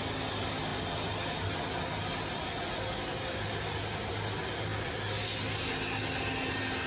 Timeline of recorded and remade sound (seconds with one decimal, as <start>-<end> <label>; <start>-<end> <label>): 0.0-6.9 recorded